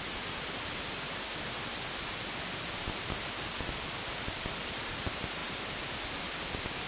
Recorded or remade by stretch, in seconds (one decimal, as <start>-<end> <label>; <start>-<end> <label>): 0.0-6.9 recorded